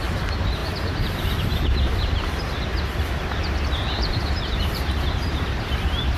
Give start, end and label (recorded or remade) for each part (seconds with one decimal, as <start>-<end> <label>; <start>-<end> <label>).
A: 0.0-2.7 remade; 2.7-4.1 recorded; 4.1-6.2 remade